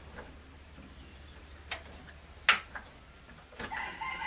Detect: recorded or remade recorded